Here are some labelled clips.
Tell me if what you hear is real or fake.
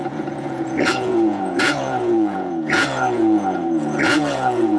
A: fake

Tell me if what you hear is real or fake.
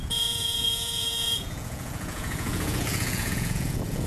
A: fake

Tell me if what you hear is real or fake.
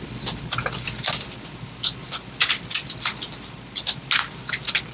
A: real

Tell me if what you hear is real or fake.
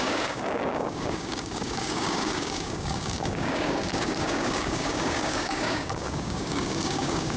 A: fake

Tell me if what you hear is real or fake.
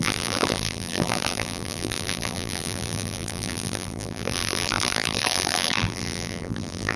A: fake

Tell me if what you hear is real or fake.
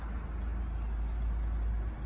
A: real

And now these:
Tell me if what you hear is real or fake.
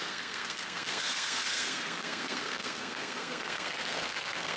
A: fake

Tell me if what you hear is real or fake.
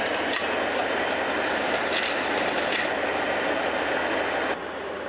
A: fake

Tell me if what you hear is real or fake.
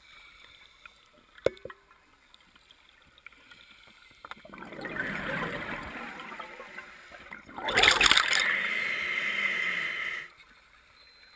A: real